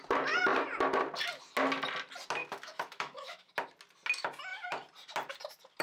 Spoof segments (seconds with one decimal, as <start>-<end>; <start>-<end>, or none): 2.4-3.5

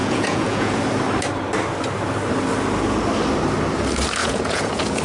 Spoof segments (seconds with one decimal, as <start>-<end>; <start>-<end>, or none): 0.0-0.8; 4.2-5.0